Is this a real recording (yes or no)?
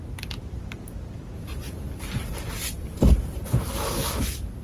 yes